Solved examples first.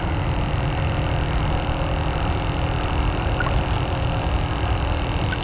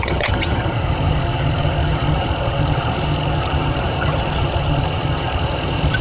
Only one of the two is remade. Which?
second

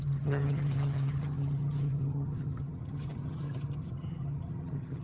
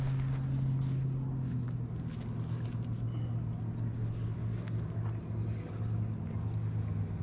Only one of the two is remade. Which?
first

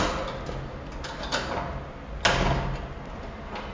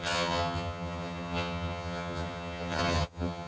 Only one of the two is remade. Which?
second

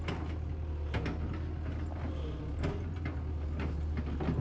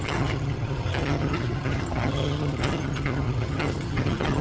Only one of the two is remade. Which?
second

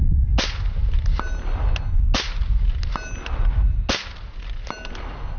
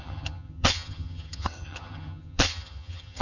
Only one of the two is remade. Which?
second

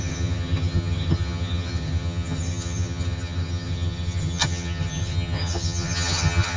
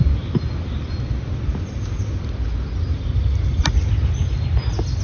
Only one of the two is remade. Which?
first